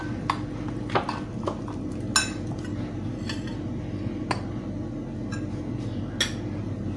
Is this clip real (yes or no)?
yes